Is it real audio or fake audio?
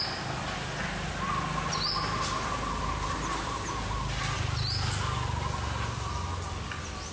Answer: real